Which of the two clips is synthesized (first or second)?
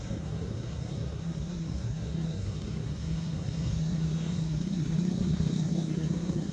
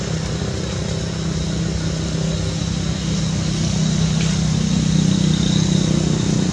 first